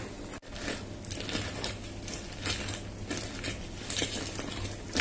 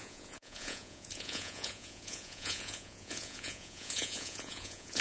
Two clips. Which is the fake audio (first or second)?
second